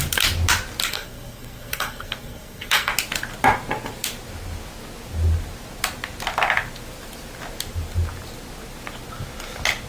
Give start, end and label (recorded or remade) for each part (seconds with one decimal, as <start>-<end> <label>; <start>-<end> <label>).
0.0-0.9 recorded; 0.9-2.9 remade; 2.9-9.9 recorded